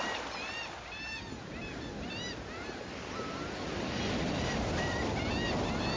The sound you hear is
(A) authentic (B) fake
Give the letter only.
A